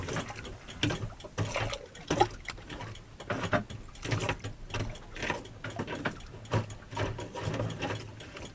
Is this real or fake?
real